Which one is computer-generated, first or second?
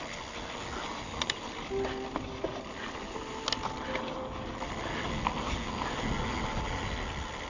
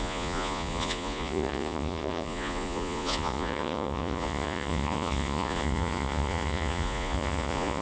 second